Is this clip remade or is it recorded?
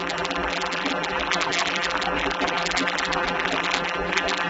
remade